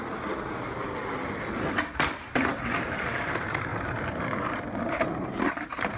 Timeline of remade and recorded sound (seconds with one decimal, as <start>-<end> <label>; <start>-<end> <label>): 0.0-1.0 remade; 1.0-1.7 recorded; 1.7-6.0 remade